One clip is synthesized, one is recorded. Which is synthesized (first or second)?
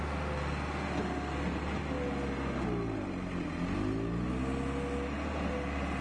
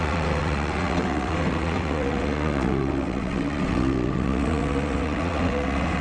second